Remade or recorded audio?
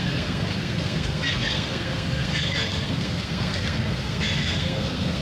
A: remade